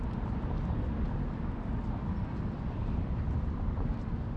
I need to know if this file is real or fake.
fake